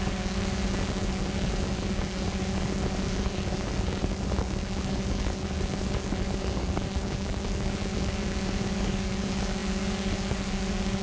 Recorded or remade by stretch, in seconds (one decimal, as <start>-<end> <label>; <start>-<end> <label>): 0.0-11.0 remade